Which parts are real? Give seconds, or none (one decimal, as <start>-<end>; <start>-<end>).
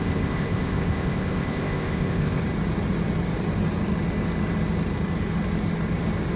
2.4-6.4